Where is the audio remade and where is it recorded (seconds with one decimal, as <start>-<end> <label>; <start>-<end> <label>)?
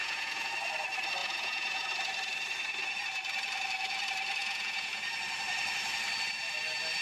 0.0-0.5 remade; 0.5-1.2 recorded; 1.2-1.9 remade; 1.9-4.4 recorded; 4.4-5.0 remade; 5.0-7.0 recorded